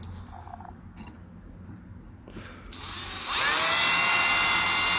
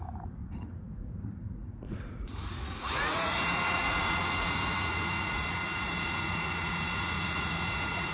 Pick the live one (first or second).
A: first